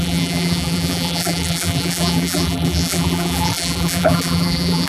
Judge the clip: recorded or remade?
remade